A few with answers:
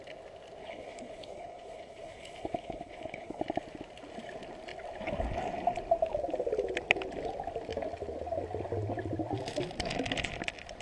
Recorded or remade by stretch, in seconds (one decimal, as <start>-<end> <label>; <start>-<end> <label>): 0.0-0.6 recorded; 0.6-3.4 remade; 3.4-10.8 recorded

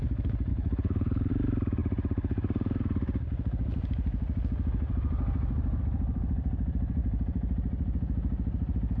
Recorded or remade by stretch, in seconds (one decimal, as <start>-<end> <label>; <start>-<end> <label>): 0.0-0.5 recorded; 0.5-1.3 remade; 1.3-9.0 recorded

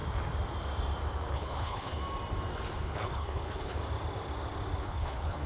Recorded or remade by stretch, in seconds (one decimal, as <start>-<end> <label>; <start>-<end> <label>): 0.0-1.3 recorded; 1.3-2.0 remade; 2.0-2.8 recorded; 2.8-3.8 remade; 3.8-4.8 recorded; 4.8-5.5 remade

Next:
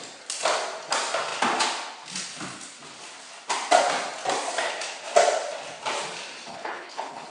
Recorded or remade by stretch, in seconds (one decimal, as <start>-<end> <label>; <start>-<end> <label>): 0.0-6.5 recorded; 6.5-7.3 remade

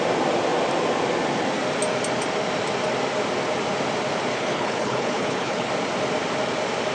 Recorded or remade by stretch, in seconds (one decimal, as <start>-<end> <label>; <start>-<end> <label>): 0.0-4.3 recorded; 4.3-5.7 remade; 5.7-6.9 recorded